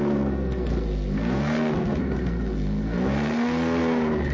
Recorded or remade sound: remade